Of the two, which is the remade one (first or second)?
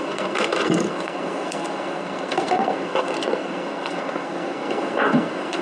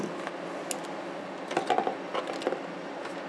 first